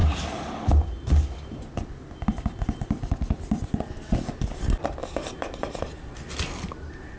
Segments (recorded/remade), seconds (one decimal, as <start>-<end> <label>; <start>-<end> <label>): 0.0-5.0 recorded; 5.0-6.2 remade; 6.2-7.2 recorded